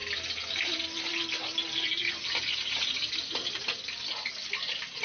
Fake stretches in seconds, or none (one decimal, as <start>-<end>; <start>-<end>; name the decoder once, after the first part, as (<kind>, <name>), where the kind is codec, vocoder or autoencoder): none

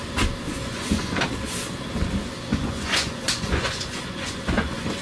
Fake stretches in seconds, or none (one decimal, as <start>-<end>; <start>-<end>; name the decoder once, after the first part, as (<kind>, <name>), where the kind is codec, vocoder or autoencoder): 0.6-1.2 (vocoder, Vocos); 2.5-5.0

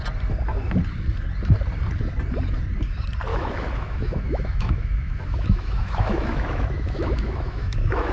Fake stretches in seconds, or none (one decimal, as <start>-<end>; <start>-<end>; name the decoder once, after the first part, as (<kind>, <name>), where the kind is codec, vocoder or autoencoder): 3.3-8.1 (autoencoder, DAC-VAE)

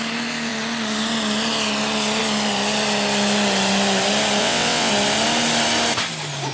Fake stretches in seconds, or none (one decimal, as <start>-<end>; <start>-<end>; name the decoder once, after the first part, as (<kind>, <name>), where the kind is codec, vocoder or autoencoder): 4.4-4.9 (vocoder, WaveNeXt)